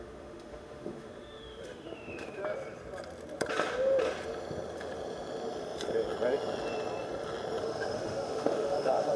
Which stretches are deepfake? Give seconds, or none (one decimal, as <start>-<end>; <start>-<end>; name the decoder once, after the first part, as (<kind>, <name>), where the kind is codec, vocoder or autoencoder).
0.0-2.4 (autoencoder, DAC-VAE); 7.6-9.2